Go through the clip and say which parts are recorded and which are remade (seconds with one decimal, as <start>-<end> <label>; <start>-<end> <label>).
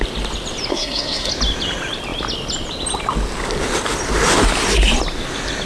0.0-0.7 recorded; 0.7-1.3 remade; 1.3-5.7 recorded